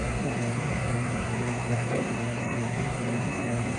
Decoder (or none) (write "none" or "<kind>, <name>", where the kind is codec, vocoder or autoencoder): codec, SNAC